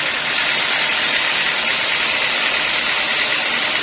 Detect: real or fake real